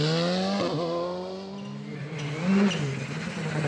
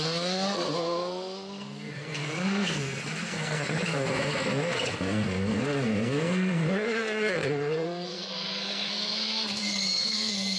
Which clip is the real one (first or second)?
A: first